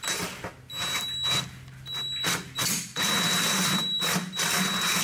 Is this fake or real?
real